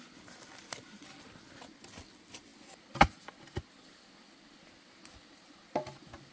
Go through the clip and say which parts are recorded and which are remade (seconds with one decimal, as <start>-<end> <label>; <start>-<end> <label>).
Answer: 0.0-6.3 recorded